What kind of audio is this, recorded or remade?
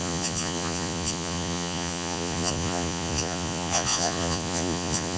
remade